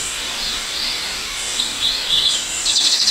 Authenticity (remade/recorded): remade